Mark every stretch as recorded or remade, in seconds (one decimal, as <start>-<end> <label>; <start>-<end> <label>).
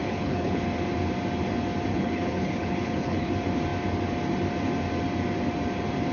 0.0-0.6 remade; 0.6-1.9 recorded; 1.9-3.3 remade; 3.3-6.1 recorded